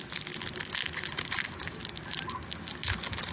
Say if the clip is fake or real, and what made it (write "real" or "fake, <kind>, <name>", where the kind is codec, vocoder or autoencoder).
real